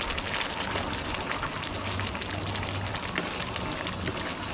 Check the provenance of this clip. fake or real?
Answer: real